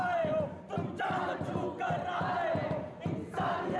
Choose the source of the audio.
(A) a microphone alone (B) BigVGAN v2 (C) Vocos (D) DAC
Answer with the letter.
A